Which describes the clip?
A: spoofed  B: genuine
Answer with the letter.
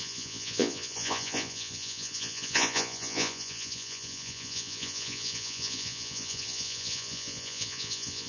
A